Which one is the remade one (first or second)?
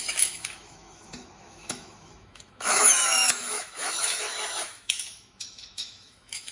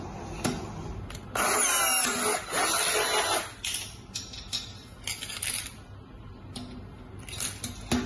first